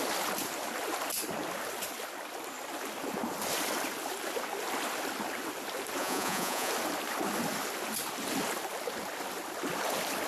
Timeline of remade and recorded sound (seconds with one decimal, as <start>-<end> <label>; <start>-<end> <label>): 0.0-6.0 recorded; 6.0-6.7 remade; 6.7-10.3 recorded